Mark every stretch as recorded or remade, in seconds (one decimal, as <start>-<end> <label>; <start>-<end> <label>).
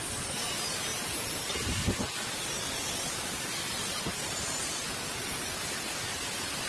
0.0-6.7 recorded